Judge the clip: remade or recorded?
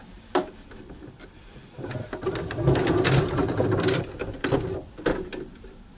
remade